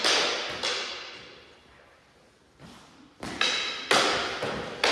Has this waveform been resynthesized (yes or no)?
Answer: no